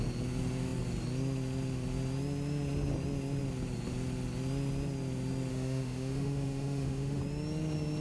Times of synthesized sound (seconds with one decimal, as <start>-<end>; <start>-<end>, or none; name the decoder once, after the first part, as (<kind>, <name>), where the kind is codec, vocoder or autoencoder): 5.5-7.2 (autoencoder, DAC-VAE)